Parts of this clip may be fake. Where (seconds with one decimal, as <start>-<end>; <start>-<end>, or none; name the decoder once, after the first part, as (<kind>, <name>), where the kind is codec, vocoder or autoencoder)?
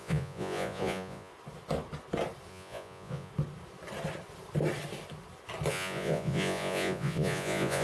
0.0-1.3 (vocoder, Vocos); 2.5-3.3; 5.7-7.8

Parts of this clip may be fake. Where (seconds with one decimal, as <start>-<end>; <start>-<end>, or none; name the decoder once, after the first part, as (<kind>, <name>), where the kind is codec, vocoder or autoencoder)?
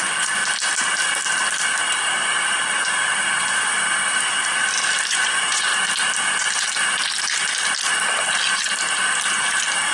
0.0-0.4 (vocoder, Vocos); 5.1-5.7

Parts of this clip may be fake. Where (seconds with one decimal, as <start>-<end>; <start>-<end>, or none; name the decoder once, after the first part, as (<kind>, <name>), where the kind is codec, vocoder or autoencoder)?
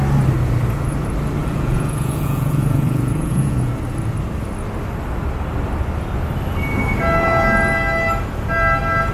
1.4-3.7 (vocoder, Vocos)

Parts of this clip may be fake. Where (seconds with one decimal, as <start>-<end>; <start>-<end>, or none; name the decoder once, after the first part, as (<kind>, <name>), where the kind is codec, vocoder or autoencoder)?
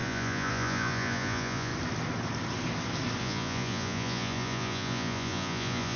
0.0-1.7 (vocoder, Vocos); 3.2-6.0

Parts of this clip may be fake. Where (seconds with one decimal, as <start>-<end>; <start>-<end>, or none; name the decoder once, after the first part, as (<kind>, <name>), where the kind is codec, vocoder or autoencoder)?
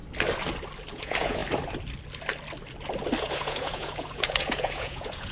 0.9-1.4 (vocoder, Vocos); 3.2-5.3